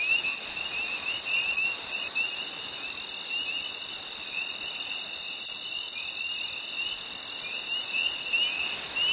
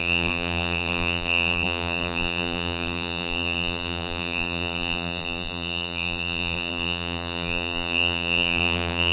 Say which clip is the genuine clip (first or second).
first